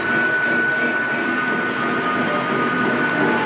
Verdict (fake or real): real